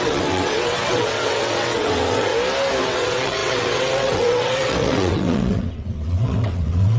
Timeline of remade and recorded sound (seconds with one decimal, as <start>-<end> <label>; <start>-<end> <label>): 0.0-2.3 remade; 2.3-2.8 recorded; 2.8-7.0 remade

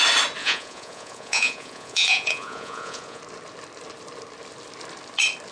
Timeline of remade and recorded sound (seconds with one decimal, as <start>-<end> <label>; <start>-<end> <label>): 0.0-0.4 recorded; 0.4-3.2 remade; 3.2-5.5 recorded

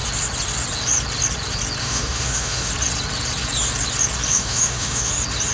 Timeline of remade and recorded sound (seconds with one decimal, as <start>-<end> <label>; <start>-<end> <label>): 0.0-1.8 recorded; 1.8-2.7 remade; 2.7-4.3 recorded; 4.3-5.1 remade; 5.1-5.5 recorded

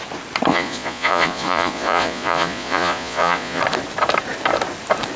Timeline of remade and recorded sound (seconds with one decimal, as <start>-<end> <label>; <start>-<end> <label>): 0.0-0.5 recorded; 0.5-3.6 remade; 3.6-5.2 recorded